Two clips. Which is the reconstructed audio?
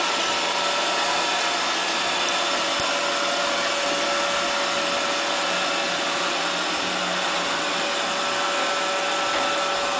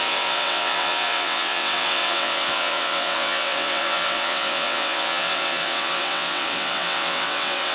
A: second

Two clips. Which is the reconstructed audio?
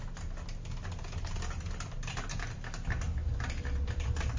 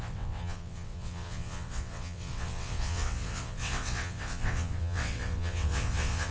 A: second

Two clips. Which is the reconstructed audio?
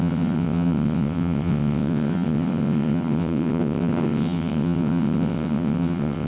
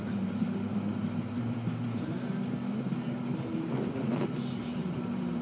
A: first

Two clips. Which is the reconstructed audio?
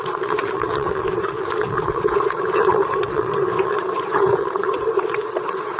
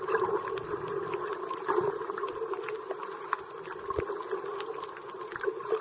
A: first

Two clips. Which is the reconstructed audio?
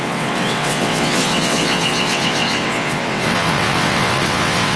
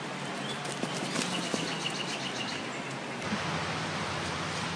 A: first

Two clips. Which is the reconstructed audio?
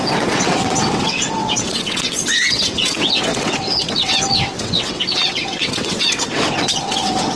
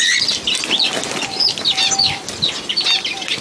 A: first